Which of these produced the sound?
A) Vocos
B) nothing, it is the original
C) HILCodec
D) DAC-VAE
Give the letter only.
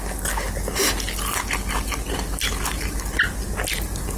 B